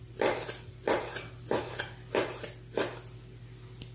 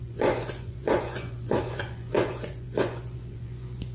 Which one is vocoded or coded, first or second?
second